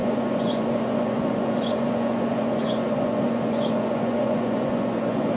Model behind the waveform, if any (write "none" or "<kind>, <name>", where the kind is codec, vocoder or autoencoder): vocoder, Vocos